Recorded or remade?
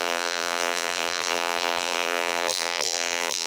remade